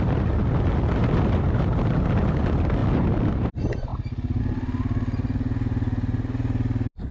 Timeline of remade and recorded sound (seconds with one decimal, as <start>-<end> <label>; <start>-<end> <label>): 0.0-7.1 recorded